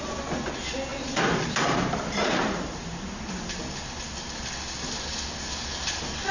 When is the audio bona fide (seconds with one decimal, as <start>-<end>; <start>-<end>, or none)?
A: 0.0-0.9; 3.6-6.3